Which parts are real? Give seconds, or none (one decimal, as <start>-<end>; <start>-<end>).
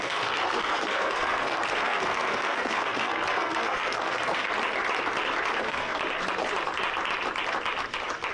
4.5-5.6; 6.0-8.3